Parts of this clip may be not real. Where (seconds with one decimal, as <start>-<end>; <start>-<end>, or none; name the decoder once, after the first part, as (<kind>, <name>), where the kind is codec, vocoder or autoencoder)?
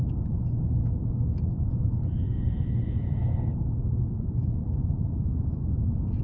4.4-5.8 (autoencoder, DAC-VAE)